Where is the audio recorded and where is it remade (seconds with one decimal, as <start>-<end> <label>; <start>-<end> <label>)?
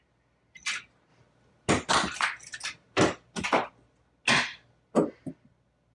0.0-6.0 recorded